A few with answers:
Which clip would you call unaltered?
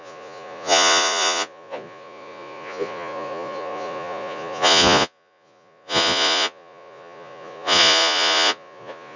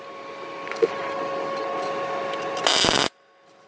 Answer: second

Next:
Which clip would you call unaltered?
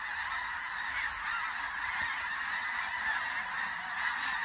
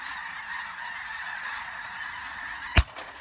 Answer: first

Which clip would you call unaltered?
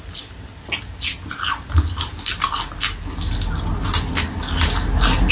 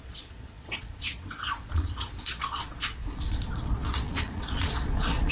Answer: first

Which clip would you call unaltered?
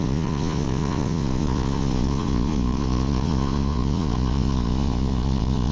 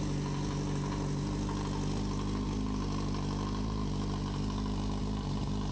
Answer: second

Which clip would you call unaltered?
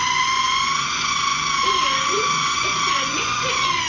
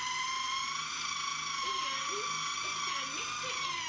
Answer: second